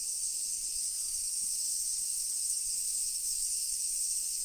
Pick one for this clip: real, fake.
fake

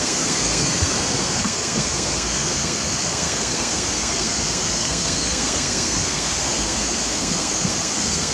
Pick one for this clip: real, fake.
fake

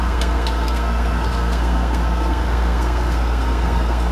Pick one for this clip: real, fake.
fake